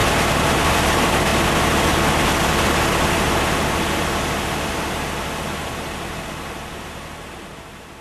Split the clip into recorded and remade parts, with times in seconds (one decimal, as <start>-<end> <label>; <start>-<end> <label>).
0.0-1.3 remade; 1.3-6.1 recorded; 6.1-8.0 remade

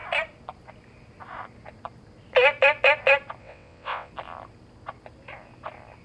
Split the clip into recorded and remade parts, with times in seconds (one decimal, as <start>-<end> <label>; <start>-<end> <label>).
0.0-3.4 recorded; 3.4-4.1 remade; 4.1-6.0 recorded

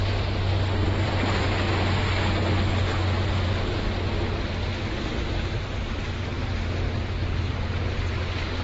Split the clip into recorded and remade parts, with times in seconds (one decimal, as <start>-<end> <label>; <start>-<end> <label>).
0.0-0.8 recorded; 0.8-1.5 remade; 1.5-8.6 recorded

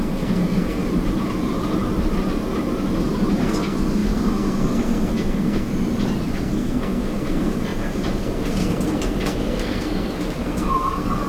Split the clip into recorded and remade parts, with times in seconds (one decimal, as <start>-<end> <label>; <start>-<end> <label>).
0.0-0.8 remade; 0.8-3.3 recorded; 3.3-5.7 remade; 5.7-6.3 recorded; 6.3-11.3 remade

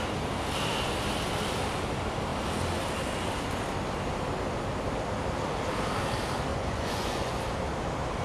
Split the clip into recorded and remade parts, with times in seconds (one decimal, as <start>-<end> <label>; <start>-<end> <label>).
0.0-6.5 recorded; 6.5-7.4 remade; 7.4-8.2 recorded

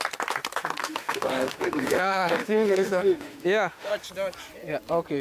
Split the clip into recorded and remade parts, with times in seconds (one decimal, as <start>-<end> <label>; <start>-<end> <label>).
0.0-0.8 recorded; 0.8-3.9 remade; 3.9-5.2 recorded